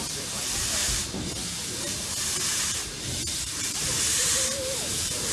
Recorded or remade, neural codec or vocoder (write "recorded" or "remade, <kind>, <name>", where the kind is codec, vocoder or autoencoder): remade, vocoder, BigVGAN v2